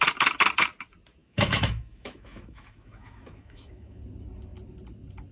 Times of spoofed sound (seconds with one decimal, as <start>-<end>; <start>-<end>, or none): 1.2-4.0